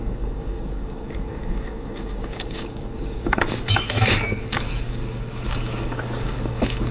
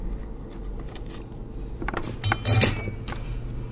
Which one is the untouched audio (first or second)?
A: second